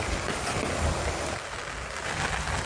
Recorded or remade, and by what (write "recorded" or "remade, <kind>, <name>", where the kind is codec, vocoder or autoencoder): recorded